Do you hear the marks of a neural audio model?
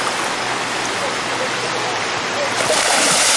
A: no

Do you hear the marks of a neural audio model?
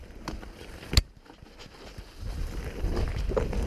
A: no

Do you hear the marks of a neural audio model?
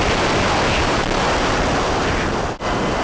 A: no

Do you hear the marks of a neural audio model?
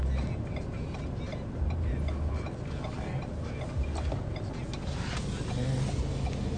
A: no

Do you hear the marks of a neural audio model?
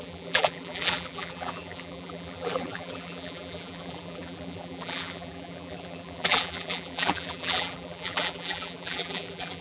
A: yes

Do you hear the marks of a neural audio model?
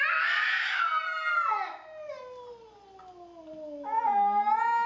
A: no